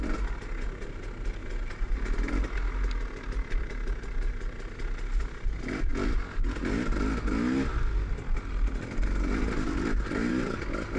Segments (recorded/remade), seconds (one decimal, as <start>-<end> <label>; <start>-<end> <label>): 0.0-11.0 recorded